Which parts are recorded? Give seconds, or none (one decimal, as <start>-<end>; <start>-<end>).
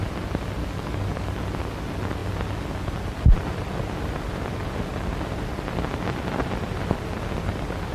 0.0-0.6; 1.4-7.9